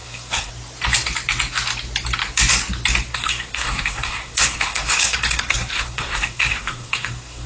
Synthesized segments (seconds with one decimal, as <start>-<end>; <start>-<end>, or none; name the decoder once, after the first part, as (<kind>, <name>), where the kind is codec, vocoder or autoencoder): 0.0-0.5 (codec, SNAC); 3.1-7.5